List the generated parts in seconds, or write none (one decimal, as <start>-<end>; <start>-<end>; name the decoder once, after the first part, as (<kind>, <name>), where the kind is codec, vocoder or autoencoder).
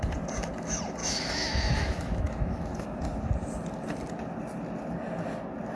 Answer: 1.0-3.0 (autoencoder, DAC-VAE)